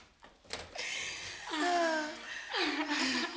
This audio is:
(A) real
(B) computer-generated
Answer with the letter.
A